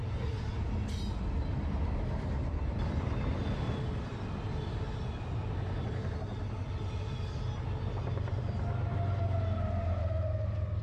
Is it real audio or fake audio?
real